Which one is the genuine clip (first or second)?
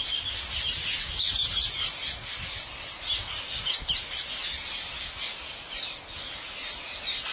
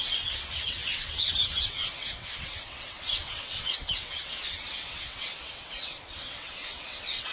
first